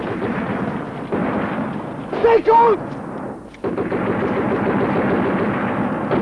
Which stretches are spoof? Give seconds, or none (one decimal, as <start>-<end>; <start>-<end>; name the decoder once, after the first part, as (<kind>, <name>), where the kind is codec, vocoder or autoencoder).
none